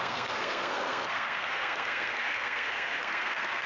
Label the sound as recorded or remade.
remade